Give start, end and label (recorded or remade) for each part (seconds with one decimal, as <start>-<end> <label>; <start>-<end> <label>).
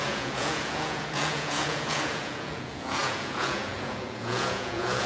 0.0-5.1 remade